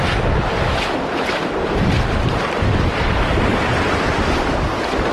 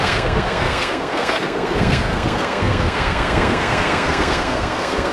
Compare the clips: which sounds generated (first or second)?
second